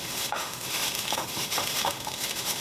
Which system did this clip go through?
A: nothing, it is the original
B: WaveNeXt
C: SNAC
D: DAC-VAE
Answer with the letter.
D